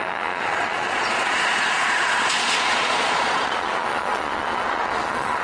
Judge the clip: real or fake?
fake